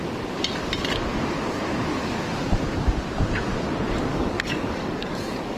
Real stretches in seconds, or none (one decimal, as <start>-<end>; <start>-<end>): 0.0-4.1